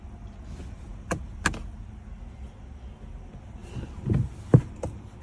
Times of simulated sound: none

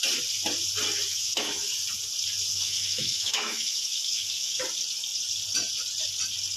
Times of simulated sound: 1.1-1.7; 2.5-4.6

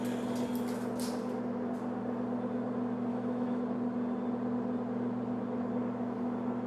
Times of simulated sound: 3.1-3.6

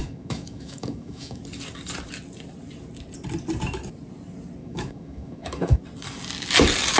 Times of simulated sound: 0.0-1.4; 4.6-5.8

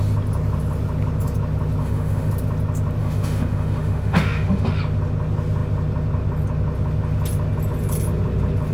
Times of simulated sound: 1.8-2.3; 3.0-4.8